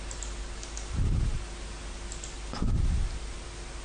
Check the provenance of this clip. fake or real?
real